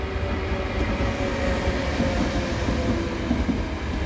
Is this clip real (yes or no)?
yes